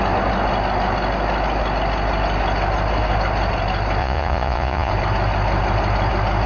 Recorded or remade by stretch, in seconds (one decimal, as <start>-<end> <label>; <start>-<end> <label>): 0.0-4.0 recorded; 4.0-4.9 remade; 4.9-6.5 recorded